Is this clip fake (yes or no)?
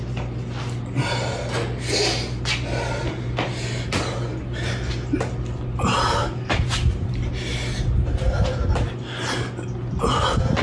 no